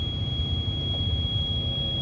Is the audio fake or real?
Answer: real